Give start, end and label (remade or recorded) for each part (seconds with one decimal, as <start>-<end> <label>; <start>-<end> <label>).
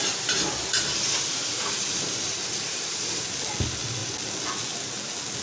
0.0-3.2 remade; 3.2-5.4 recorded